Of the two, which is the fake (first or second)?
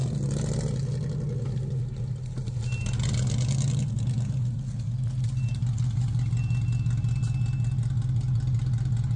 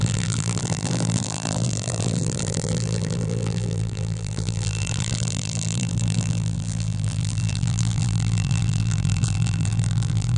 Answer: second